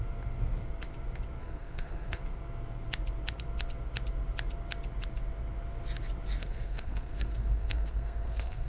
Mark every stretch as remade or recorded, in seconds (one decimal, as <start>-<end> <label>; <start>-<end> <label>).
0.0-1.4 recorded; 1.4-2.2 remade; 2.2-6.4 recorded; 6.4-8.7 remade